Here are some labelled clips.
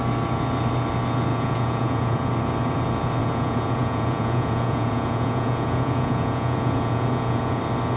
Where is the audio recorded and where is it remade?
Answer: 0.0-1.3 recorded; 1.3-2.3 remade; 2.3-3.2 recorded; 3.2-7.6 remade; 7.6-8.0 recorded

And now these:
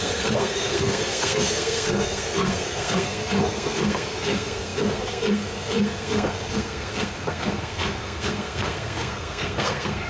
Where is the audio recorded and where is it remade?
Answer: 0.0-10.1 remade

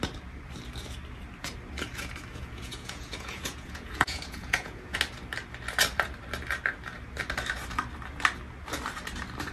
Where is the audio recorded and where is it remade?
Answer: 0.0-2.3 recorded; 2.3-5.0 remade; 5.0-9.5 recorded